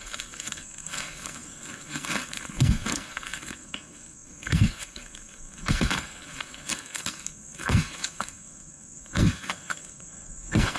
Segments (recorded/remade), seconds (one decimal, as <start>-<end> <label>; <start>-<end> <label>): 0.0-10.8 remade